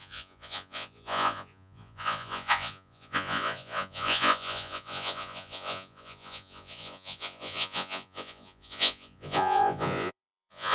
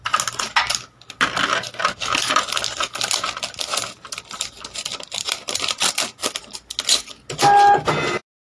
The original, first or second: second